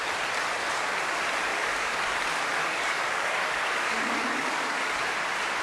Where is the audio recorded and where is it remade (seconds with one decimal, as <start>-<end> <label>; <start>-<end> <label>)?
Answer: 0.0-1.5 recorded; 1.5-2.2 remade; 2.2-2.6 recorded; 2.6-4.9 remade; 4.9-5.6 recorded